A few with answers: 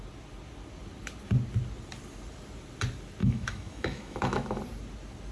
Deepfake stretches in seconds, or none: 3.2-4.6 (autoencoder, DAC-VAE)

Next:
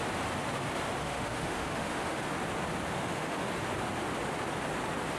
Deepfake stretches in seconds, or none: 1.0-2.2 (autoencoder, DAC-VAE); 2.9-3.5

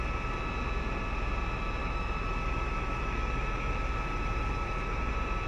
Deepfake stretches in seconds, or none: 1.8-5.1 (autoencoder, DAC-VAE)

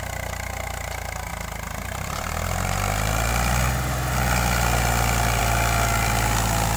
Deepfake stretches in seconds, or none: none

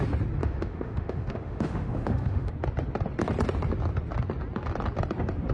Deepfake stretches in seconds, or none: 0.4-2.5 (autoencoder, DAC-VAE)

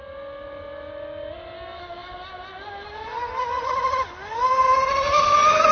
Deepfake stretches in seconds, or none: none